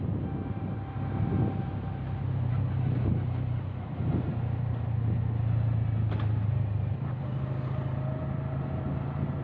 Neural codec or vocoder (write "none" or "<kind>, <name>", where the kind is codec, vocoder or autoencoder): none